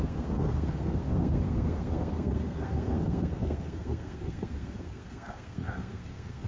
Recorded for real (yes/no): no